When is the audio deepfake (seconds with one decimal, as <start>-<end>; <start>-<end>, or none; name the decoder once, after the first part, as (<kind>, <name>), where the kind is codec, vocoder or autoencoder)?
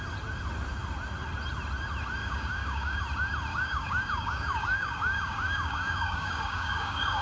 2.2-3.0 (codec, DAC); 3.5-7.2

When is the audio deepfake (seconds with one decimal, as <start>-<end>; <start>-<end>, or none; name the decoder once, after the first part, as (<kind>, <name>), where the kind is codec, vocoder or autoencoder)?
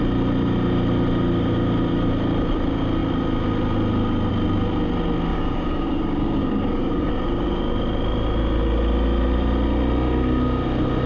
5.3-7.1 (codec, DAC)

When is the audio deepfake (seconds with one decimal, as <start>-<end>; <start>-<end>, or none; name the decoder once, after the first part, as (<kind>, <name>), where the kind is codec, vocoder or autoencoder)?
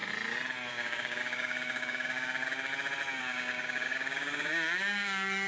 0.7-2.7 (codec, DAC); 3.2-5.5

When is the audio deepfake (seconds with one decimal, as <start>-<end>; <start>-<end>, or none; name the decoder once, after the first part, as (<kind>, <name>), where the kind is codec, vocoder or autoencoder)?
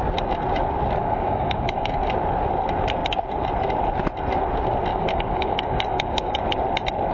1.0-2.1 (codec, DAC); 4.9-6.4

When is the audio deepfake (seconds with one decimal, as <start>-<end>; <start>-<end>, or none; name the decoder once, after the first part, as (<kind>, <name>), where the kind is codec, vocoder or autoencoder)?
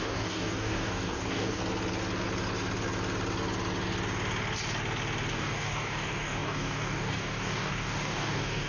0.0-1.6 (codec, DAC); 5.3-8.7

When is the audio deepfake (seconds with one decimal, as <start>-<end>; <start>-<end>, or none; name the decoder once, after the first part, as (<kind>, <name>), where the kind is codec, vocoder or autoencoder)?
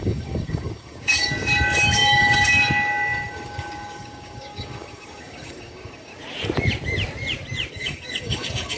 0.0-6.1 (codec, DAC); 7.7-8.8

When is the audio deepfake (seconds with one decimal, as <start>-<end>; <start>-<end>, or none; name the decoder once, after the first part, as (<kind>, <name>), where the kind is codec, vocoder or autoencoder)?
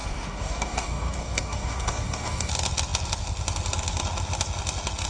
0.0-2.5 (codec, DAC)